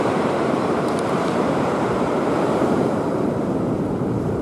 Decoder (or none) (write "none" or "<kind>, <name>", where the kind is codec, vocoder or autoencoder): vocoder, BigVGAN v2